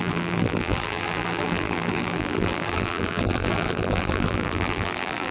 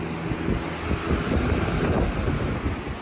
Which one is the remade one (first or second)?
first